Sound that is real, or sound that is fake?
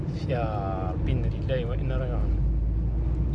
real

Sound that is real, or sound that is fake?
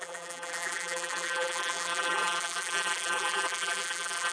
fake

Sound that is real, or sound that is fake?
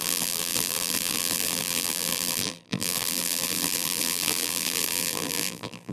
fake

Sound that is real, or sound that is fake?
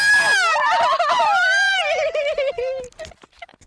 real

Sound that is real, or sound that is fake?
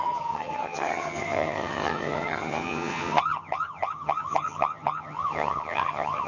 fake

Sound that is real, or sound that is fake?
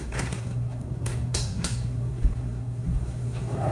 fake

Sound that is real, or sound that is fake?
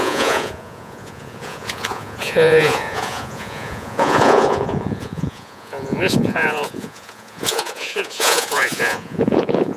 fake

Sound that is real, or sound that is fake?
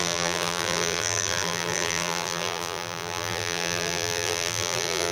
fake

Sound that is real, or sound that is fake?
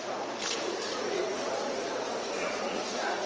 fake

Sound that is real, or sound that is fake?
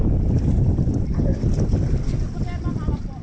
real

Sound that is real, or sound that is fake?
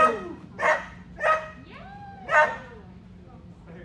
real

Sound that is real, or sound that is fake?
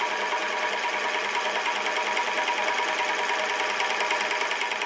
real